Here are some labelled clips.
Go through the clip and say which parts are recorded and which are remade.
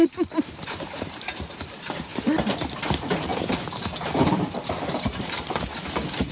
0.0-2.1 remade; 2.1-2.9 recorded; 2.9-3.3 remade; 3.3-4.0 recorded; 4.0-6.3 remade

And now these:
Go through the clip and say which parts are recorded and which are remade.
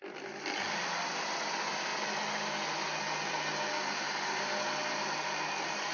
0.0-5.9 recorded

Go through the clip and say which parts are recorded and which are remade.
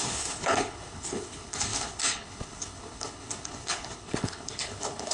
0.0-5.1 remade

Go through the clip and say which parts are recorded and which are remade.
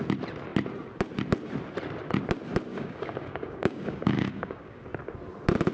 0.0-2.7 recorded; 2.7-4.8 remade; 4.8-5.7 recorded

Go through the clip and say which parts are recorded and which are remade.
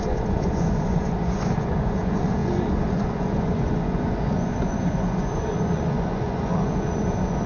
0.0-7.5 remade